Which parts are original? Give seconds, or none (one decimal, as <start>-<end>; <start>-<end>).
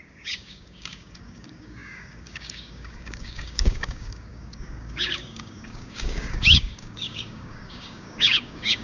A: none